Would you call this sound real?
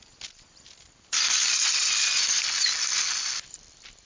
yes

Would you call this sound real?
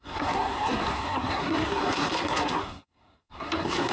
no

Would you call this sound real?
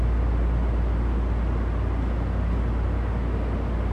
yes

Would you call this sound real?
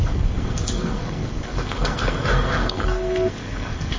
no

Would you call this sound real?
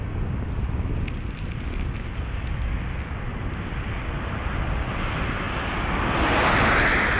yes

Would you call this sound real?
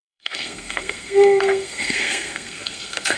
no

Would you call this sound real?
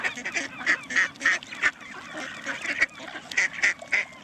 yes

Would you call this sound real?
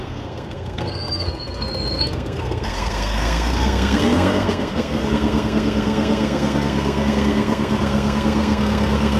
no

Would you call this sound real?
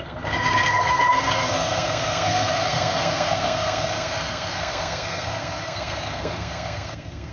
no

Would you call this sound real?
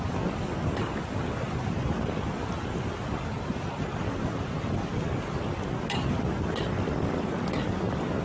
yes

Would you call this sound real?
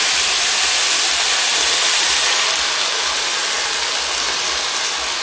yes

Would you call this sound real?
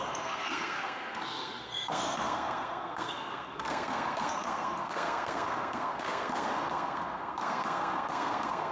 no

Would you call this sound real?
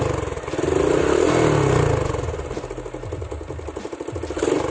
yes